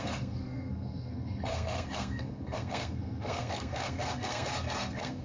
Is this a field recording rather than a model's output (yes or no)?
no